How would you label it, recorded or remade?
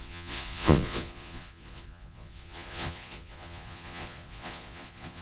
remade